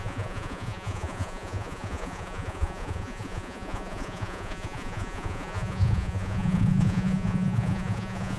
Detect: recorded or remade remade